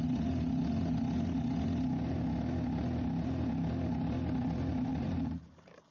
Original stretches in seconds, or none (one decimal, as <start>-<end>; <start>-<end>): 0.0-4.9